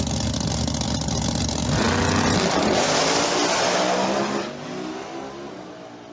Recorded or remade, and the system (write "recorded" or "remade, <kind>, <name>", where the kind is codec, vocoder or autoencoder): recorded